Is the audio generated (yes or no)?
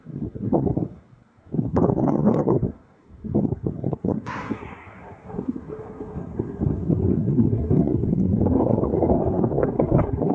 yes